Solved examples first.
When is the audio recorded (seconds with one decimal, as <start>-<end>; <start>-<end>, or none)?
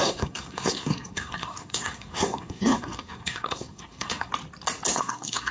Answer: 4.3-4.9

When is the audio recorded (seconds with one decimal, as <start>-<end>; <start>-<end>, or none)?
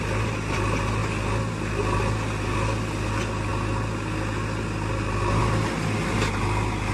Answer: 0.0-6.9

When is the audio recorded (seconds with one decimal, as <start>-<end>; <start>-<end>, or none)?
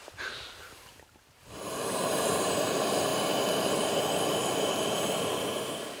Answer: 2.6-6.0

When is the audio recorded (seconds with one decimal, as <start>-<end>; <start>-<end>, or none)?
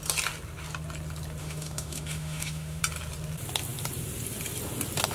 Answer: 0.0-1.4; 2.8-5.1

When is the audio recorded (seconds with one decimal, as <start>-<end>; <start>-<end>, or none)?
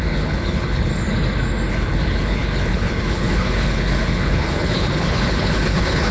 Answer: 0.9-1.7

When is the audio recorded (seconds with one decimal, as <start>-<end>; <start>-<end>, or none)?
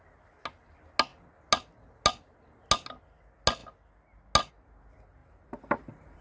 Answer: 0.0-5.2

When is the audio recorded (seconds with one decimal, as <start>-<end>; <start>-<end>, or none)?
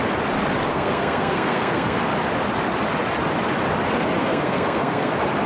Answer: 0.0-0.7; 2.0-4.2; 5.1-5.5